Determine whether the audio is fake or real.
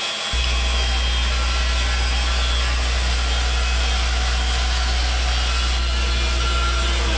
real